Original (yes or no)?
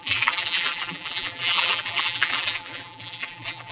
no